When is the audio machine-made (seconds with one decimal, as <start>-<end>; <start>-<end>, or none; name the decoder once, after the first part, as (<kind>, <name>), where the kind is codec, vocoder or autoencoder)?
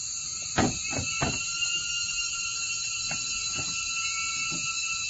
none